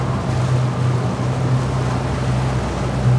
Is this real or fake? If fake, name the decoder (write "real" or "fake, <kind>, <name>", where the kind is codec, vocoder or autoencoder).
real